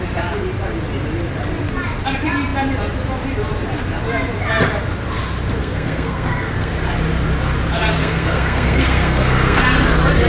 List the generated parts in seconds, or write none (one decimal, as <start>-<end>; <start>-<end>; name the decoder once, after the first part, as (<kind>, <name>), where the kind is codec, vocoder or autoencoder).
5.6-6.7 (codec, SNAC); 8.0-9.6

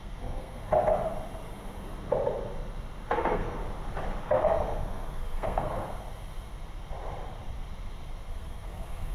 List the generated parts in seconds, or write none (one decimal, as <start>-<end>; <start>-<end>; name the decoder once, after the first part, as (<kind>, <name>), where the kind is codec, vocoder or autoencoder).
0.0-0.6 (codec, SNAC); 3.1-3.6; 4.2-6.0; 8.3-9.1

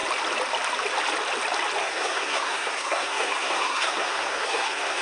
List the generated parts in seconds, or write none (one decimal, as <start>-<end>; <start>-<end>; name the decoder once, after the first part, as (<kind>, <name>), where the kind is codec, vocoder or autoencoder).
1.8-5.0 (codec, SNAC)

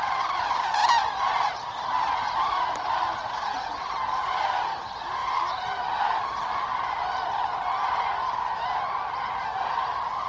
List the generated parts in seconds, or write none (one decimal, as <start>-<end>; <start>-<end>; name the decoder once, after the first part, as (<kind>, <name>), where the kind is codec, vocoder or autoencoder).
none

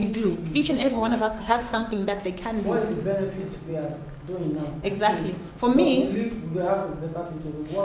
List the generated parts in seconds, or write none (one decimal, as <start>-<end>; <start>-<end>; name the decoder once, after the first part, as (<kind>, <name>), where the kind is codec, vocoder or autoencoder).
0.0-2.2 (codec, SNAC)